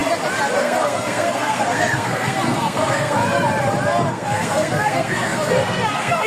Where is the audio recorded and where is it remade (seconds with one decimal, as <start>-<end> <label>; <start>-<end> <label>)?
0.0-0.6 recorded; 0.6-3.2 remade; 3.2-4.1 recorded; 4.1-6.3 remade